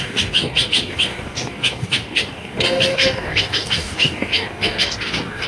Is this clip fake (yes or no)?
yes